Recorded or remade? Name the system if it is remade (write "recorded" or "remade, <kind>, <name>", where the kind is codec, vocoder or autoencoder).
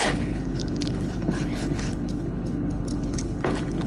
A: remade, codec, HILCodec